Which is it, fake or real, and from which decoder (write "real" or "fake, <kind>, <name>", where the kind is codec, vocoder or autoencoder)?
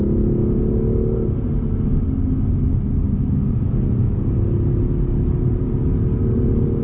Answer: real